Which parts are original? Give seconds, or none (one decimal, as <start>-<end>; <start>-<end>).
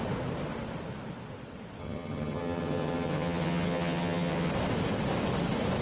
0.0-1.8; 4.5-5.8